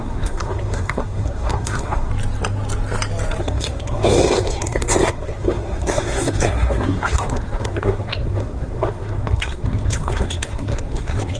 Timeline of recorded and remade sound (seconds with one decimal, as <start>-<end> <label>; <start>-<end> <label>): 0.0-2.1 remade; 2.1-3.4 recorded; 3.4-11.4 remade